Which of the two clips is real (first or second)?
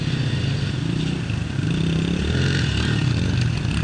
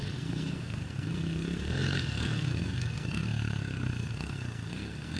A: first